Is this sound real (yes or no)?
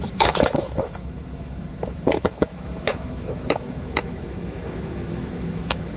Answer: no